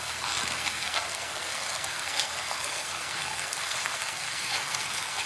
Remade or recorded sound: remade